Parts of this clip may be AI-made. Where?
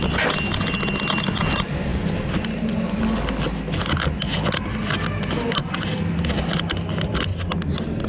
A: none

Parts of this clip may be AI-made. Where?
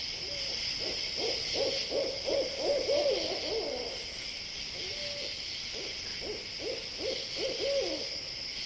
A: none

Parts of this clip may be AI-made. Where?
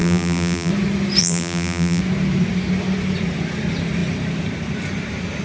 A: 0.0-0.7 (vocoder, BigVGAN v2); 1.2-2.0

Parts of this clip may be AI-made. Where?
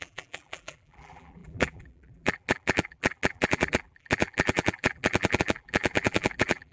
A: 0.0-6.7 (vocoder, BigVGAN v2)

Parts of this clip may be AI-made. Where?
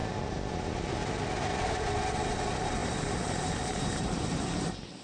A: 2.8-5.0 (vocoder, BigVGAN v2)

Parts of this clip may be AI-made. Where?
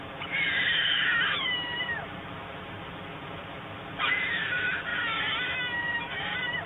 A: 0.0-4.9 (vocoder, BigVGAN v2); 5.8-6.7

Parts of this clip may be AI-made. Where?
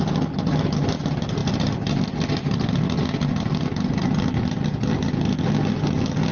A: none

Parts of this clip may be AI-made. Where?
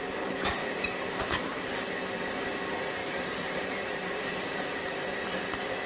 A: 0.6-1.5 (vocoder, BigVGAN v2); 3.0-4.8